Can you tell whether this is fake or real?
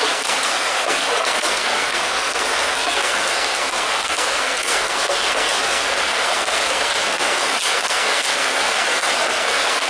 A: fake